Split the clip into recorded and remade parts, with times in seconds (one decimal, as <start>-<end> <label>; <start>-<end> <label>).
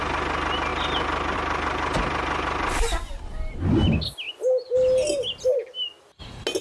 0.0-6.6 recorded